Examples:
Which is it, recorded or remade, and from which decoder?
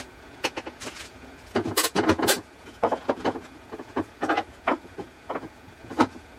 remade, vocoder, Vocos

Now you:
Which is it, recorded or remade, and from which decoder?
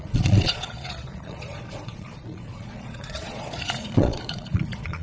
remade, vocoder, Vocos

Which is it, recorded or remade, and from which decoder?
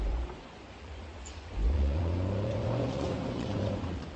remade, vocoder, Vocos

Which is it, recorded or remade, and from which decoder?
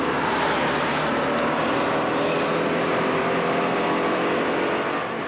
recorded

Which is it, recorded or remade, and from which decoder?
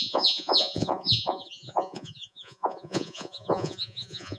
remade, vocoder, Vocos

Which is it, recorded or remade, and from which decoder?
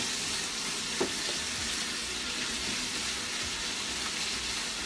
recorded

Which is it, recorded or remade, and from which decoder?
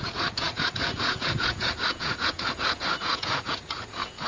remade, vocoder, Vocos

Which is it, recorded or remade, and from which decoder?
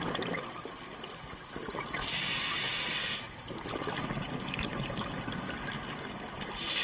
recorded